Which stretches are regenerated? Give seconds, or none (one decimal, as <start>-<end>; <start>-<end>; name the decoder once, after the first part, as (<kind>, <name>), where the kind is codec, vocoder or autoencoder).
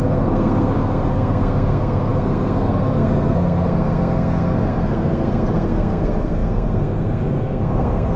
0.0-8.2 (codec, SNAC)